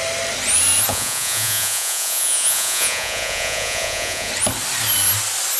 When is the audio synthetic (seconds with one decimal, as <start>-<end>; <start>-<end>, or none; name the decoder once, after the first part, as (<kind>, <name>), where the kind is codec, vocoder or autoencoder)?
0.9-4.3 (vocoder, Vocos)